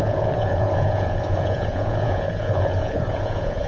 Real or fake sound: fake